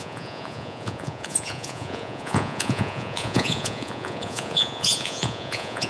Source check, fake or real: fake